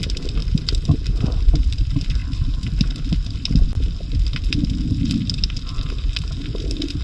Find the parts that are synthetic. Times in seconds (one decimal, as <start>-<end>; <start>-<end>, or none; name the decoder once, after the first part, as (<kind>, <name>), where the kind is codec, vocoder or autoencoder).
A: none